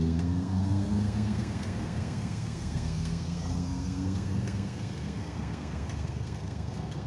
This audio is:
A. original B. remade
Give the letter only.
B